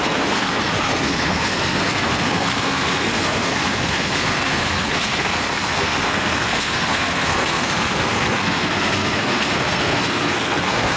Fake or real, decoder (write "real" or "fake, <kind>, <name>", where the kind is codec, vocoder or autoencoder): fake, codec, SNAC